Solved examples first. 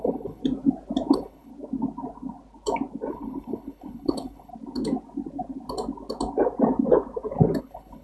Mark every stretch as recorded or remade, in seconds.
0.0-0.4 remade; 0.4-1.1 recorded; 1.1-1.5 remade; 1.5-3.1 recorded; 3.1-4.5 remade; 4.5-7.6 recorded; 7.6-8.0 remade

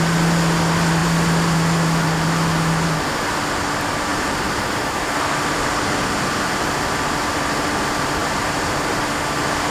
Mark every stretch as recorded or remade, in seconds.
0.0-4.1 recorded; 4.1-5.8 remade; 5.8-8.2 recorded; 8.2-9.0 remade; 9.0-9.7 recorded

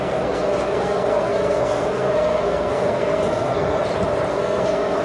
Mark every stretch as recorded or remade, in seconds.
0.0-3.8 remade; 3.8-4.3 recorded; 4.3-5.0 remade

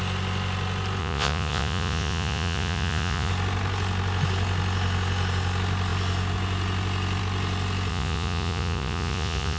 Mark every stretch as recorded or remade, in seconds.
0.0-1.0 recorded; 1.0-3.3 remade; 3.3-7.9 recorded; 7.9-9.6 remade

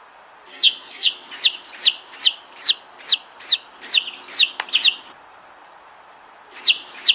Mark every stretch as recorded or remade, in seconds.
0.0-0.5 recorded; 0.5-1.1 remade; 1.1-7.1 recorded